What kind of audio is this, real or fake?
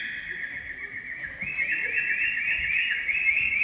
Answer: real